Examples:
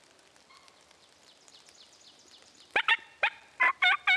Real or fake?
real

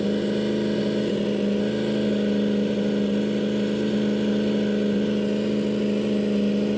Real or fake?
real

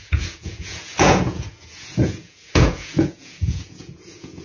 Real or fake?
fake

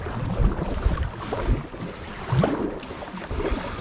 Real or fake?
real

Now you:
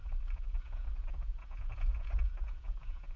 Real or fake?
fake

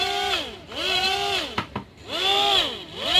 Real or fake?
real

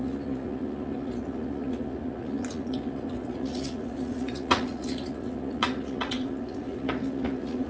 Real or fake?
fake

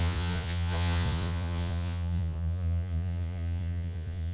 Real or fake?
fake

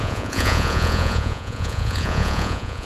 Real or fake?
fake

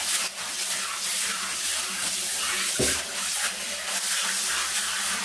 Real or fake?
real